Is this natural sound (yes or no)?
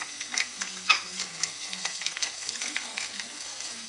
no